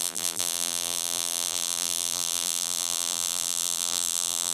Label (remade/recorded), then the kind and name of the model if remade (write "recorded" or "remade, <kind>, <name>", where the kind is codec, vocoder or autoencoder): remade, vocoder, BigVGAN v2